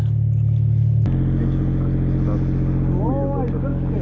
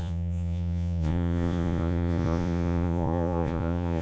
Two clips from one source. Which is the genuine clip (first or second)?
first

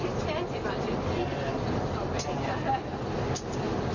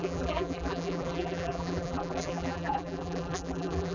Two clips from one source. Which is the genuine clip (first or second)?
first